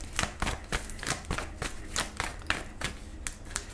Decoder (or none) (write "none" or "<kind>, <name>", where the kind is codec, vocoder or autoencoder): none